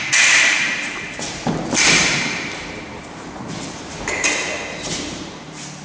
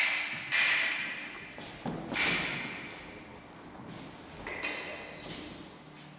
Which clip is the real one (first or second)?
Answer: second